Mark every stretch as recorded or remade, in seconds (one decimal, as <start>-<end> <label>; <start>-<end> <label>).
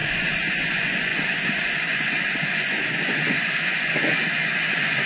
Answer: 0.0-5.1 remade